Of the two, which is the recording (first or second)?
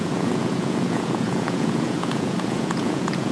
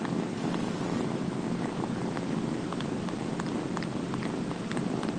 second